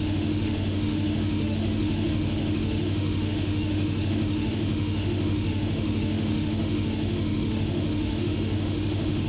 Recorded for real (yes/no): no